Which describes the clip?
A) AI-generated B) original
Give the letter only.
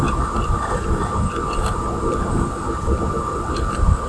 B